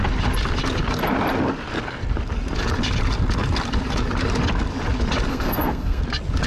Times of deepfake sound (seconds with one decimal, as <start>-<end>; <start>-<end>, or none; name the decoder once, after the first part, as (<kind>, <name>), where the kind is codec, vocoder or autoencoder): 5.3-6.0 (codec, SNAC)

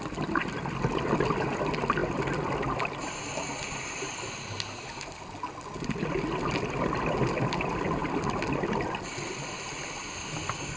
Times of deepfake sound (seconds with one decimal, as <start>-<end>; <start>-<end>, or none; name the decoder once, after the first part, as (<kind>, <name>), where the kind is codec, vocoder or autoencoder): none

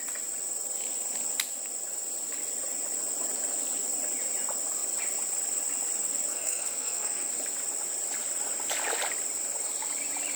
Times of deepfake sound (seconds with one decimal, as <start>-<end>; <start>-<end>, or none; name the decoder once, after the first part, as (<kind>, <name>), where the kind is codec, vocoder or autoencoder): 6.3-7.3 (codec, SNAC)

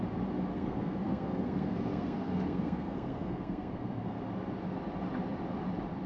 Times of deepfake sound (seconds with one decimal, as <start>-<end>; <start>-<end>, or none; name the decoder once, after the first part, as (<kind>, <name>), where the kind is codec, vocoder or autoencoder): 0.5-4.2 (codec, SNAC)

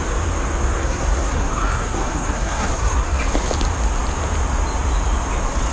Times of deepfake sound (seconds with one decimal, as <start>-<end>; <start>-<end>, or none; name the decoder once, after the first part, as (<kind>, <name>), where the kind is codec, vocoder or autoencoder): 0.8-3.2 (codec, SNAC)